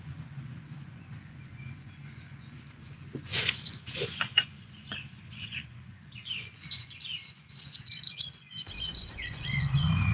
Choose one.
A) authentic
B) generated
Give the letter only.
B